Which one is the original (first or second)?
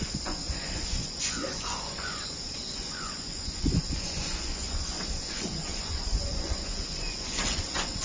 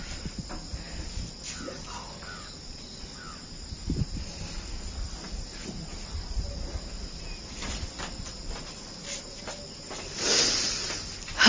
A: second